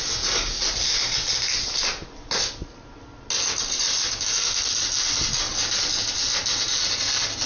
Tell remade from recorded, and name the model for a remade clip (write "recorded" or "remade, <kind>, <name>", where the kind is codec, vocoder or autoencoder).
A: recorded